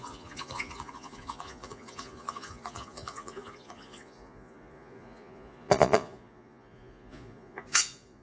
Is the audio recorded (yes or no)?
no